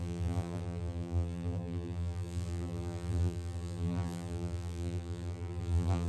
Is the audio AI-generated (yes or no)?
yes